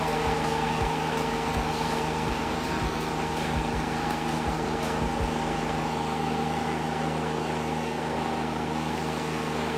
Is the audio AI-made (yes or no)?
yes